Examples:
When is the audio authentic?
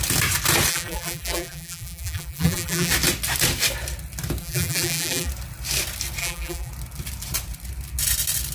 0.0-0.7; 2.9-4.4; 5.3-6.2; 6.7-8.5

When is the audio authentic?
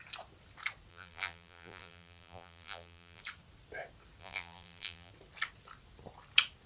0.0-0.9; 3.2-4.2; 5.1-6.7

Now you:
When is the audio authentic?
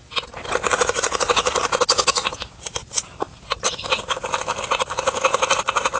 0.0-3.3; 4.6-6.0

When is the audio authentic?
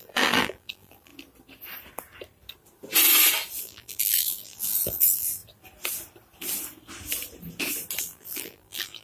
1.1-3.6; 5.4-8.0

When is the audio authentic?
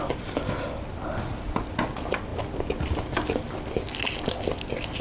0.0-5.0